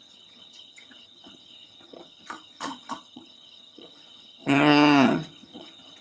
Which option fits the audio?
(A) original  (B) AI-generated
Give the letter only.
B